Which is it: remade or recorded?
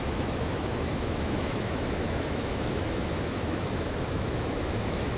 remade